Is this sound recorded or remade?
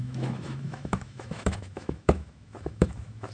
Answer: remade